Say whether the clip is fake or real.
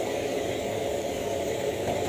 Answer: fake